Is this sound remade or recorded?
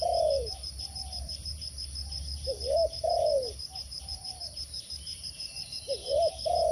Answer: remade